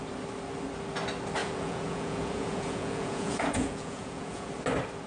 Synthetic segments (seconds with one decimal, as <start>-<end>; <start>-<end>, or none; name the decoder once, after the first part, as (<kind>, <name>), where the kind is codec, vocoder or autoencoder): 1.4-4.5 (vocoder, Vocos)